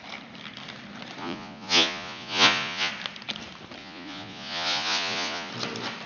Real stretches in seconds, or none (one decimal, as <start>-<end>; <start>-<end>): 0.0-1.2; 2.9-3.8; 5.5-6.1